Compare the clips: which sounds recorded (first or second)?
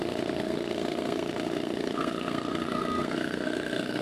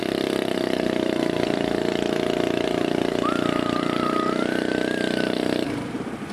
second